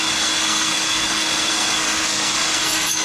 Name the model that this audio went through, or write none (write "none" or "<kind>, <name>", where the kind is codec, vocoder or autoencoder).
codec, SNAC